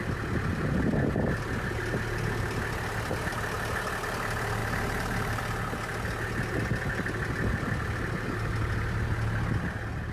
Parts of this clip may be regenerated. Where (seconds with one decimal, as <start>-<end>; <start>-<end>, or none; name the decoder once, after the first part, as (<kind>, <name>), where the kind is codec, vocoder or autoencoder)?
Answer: 4.6-5.4 (vocoder, BigVGAN v2)